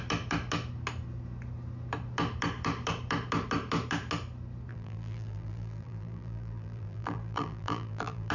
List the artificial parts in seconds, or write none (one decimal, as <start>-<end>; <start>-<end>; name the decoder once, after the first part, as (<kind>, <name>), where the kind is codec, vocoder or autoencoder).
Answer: 4.7-8.3 (vocoder, BigVGAN v2)